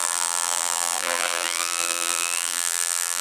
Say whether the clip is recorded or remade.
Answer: remade